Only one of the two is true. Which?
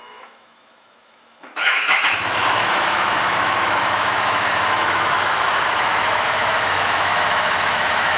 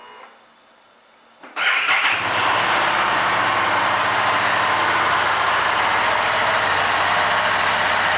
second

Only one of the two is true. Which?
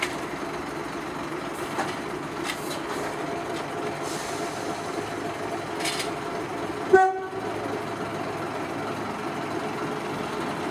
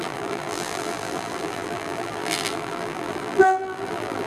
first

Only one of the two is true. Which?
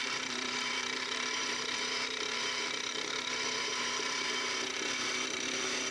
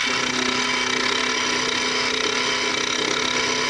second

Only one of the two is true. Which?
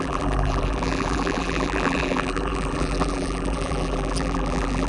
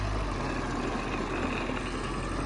second